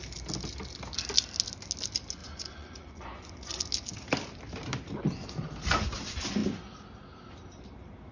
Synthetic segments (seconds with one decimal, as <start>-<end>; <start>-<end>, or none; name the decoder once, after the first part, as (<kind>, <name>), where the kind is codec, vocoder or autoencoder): 2.2-3.6 (vocoder, Vocos)